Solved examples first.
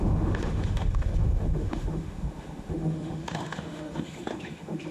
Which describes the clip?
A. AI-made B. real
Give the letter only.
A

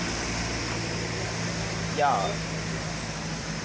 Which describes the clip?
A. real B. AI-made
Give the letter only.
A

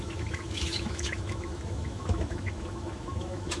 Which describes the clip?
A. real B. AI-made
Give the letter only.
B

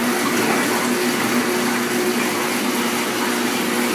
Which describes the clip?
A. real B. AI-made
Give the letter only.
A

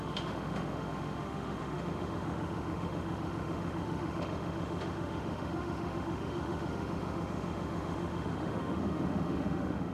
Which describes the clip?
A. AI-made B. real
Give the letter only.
A